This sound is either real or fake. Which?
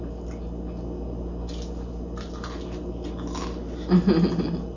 real